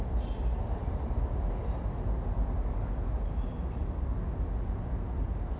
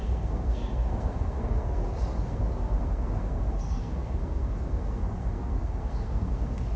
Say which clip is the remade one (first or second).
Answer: second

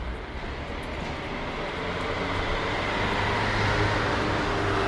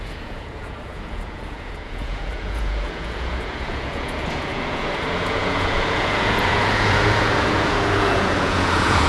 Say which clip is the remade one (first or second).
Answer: second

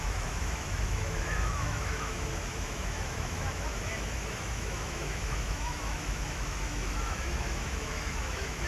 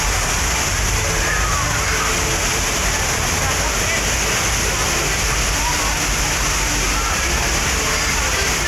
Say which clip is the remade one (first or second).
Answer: first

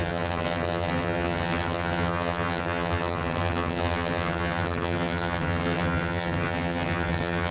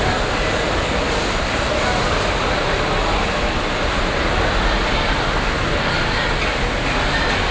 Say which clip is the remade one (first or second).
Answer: first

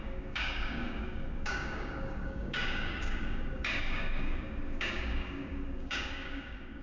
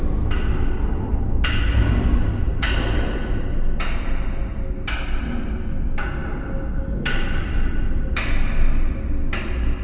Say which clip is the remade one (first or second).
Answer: first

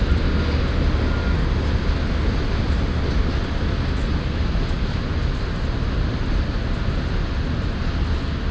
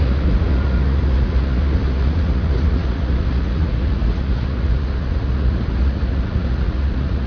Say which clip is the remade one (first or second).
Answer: second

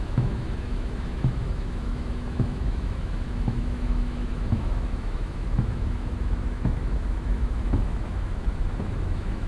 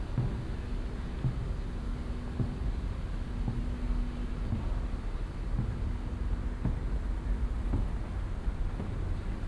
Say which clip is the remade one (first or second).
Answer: first